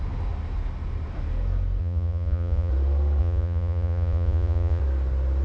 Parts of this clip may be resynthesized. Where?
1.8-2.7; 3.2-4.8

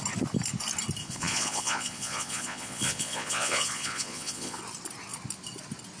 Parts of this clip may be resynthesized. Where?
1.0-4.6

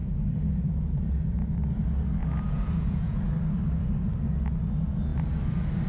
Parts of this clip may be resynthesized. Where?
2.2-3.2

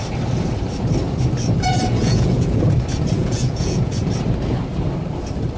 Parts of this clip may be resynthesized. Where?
2.0-2.7; 3.2-4.0

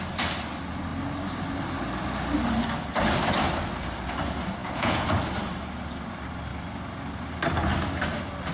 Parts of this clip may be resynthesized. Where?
4.6-5.2

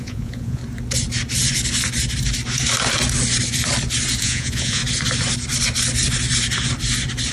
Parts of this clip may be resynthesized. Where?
0.0-0.6; 4.2-4.8

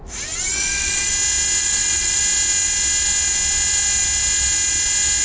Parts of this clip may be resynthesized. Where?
0.5-1.1; 1.6-2.2